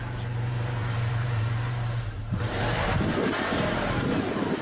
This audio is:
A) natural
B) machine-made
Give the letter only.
B